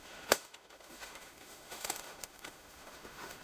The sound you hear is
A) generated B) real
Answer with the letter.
A